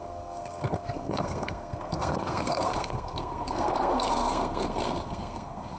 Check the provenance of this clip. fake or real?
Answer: fake